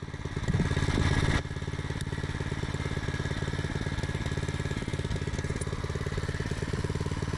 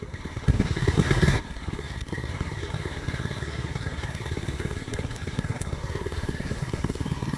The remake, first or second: second